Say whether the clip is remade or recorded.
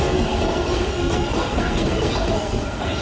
remade